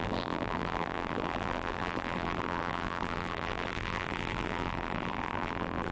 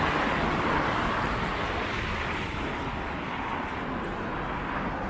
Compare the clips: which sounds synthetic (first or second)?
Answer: first